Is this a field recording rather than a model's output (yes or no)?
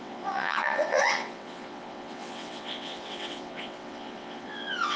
no